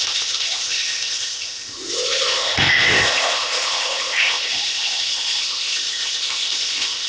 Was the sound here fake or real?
fake